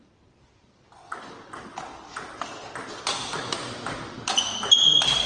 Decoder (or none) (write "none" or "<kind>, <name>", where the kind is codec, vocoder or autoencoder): none